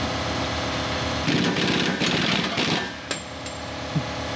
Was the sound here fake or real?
real